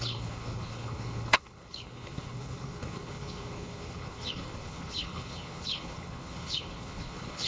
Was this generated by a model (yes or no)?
yes